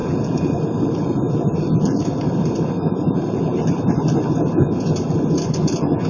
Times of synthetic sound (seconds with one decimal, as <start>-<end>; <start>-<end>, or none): 0.0-3.7